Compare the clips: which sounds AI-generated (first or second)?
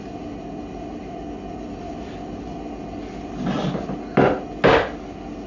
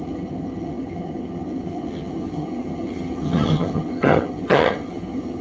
second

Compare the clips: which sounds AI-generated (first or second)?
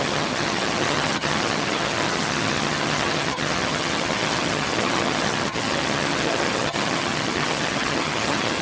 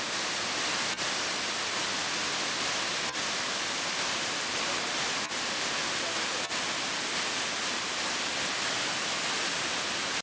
first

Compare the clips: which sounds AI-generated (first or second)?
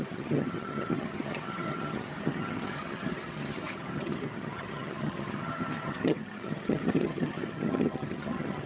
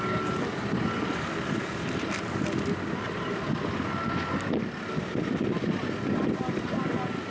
first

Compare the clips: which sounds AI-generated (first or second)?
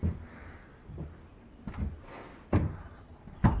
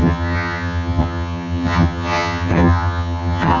second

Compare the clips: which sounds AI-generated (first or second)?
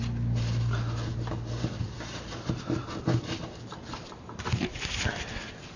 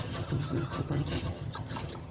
second